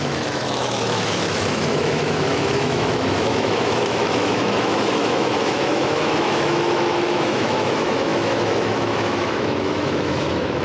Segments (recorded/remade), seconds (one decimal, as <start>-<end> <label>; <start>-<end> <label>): 0.0-10.6 remade